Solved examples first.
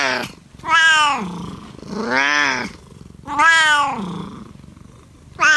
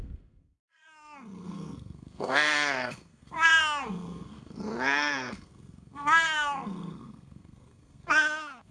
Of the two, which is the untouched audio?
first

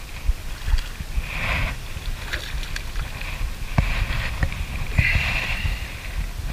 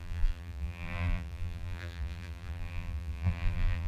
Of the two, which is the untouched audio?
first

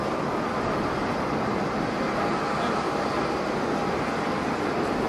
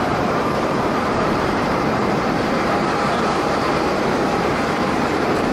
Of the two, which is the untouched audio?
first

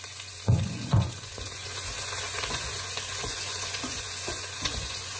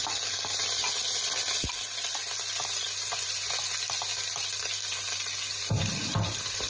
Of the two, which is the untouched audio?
second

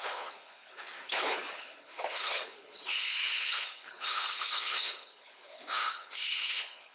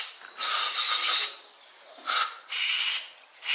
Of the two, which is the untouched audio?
second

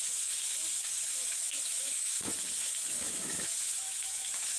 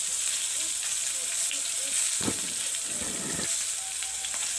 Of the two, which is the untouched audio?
second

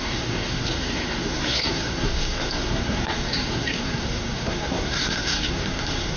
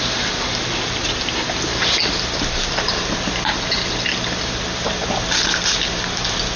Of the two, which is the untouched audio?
second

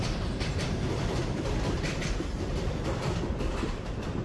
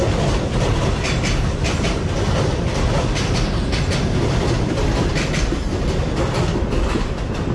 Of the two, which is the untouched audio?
second